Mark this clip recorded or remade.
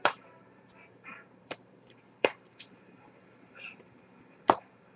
remade